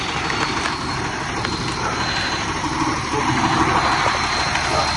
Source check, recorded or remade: recorded